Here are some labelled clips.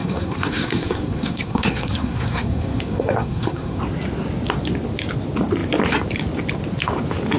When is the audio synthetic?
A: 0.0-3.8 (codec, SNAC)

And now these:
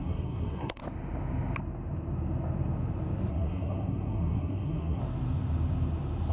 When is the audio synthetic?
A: 0.0-0.8 (codec, SNAC); 3.3-5.0

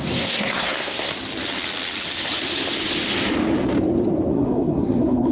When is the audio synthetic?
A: 0.0-1.1 (codec, SNAC); 4.3-5.3